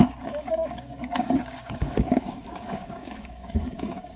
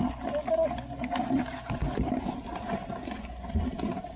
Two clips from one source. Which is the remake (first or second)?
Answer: first